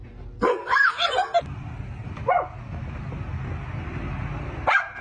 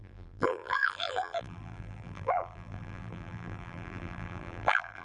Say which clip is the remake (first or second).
second